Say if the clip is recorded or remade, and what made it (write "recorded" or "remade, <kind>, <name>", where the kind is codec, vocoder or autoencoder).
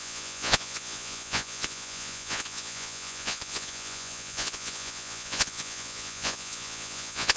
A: remade, vocoder, Vocos